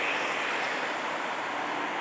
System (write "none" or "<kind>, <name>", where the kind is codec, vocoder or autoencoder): none